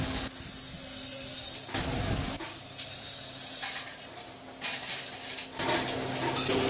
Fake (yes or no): no